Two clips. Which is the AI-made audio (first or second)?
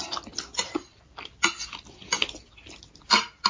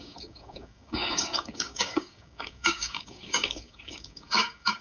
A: second